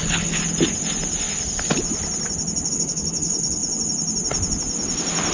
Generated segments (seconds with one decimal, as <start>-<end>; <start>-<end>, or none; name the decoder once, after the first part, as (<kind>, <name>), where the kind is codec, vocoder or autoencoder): 0.0-0.4 (codec, HILCodec); 2.7-3.6